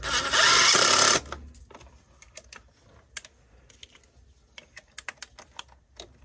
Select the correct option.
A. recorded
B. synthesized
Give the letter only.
A